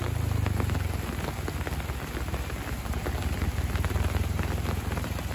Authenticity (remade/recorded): recorded